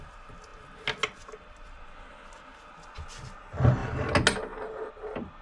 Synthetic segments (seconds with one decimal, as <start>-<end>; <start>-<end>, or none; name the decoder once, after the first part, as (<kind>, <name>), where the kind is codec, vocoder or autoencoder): none